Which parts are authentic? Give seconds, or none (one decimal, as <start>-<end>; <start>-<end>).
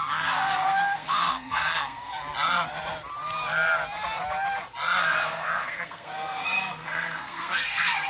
2.1-5.0